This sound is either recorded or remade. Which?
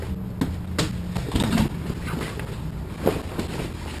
recorded